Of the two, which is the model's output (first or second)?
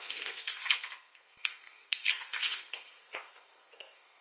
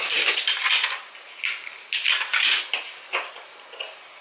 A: first